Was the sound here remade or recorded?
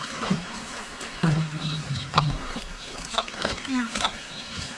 remade